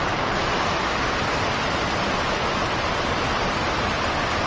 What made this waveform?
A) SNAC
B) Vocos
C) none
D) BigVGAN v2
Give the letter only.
D